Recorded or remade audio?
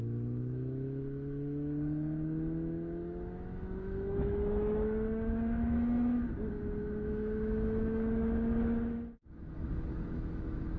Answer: remade